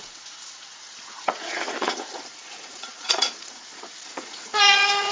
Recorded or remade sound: remade